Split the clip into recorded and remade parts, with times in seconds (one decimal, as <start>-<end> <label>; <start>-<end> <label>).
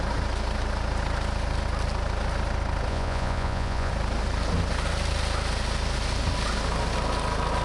0.0-2.9 recorded; 2.9-3.9 remade; 3.9-7.6 recorded